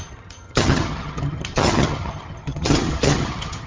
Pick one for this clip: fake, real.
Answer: fake